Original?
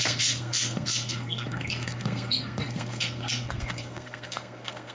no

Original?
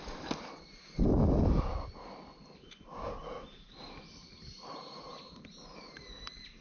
yes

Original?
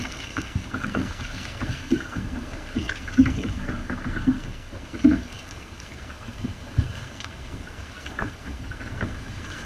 no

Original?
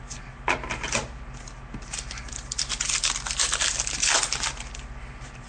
yes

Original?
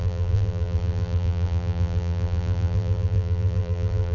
no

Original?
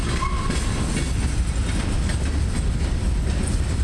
yes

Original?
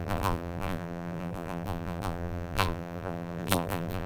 no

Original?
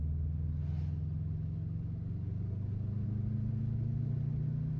yes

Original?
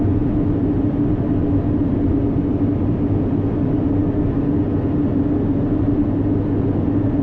yes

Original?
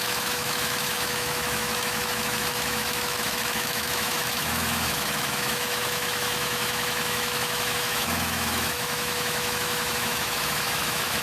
no